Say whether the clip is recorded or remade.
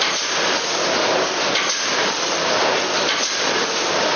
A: recorded